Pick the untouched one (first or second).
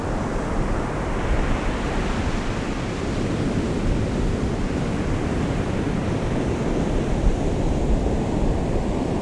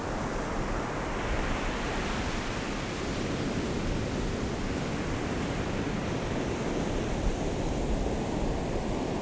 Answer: second